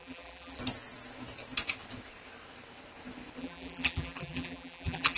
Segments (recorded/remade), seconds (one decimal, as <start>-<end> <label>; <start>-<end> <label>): 0.0-0.6 remade; 0.6-3.4 recorded; 3.4-5.2 remade